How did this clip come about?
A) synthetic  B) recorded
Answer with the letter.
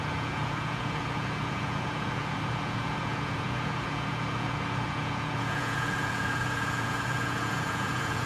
A